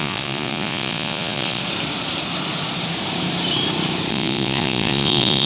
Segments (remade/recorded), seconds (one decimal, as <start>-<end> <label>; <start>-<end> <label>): 0.0-1.6 remade; 1.6-4.1 recorded; 4.1-5.5 remade